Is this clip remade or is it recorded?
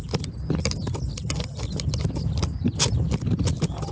recorded